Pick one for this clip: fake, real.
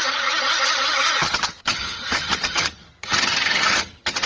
fake